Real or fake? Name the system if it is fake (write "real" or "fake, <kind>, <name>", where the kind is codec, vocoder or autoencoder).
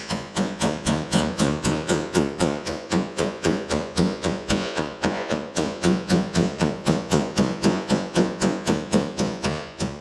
fake, vocoder, Vocos